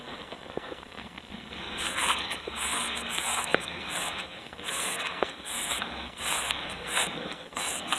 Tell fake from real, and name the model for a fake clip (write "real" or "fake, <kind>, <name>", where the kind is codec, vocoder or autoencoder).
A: fake, codec, SNAC